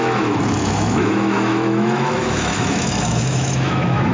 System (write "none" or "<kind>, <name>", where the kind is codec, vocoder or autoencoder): autoencoder, DAC-VAE